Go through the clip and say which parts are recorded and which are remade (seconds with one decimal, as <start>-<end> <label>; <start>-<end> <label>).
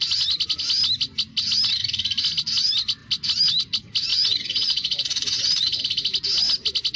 0.0-4.1 recorded; 4.1-5.8 remade; 5.8-7.0 recorded